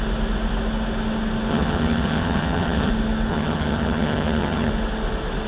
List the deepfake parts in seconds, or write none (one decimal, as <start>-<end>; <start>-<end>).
1.5-2.9; 3.3-4.7